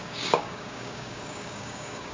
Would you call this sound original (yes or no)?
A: no